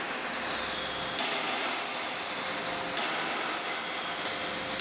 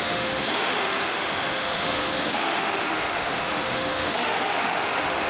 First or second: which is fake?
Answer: second